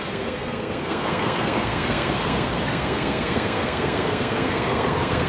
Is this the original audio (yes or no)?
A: no